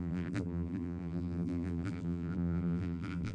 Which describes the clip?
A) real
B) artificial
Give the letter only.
B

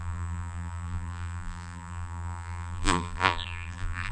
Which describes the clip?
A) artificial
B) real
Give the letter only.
A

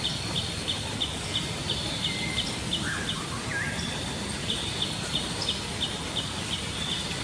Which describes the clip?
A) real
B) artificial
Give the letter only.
A